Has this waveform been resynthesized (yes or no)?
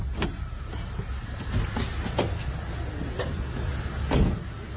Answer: no